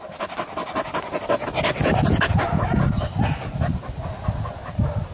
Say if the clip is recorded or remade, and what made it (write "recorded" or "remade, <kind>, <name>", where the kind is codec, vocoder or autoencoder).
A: recorded